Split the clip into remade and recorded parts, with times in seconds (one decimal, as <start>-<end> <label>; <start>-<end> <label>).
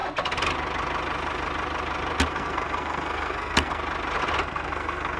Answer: 0.0-2.3 recorded; 2.3-3.8 remade; 3.8-4.4 recorded; 4.4-5.2 remade